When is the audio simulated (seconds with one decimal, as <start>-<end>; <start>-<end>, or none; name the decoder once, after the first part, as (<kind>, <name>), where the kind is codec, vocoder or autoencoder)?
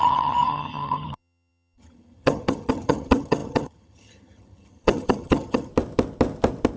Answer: 0.0-5.7 (vocoder, HiFi-GAN)